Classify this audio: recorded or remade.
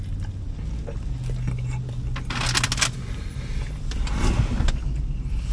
recorded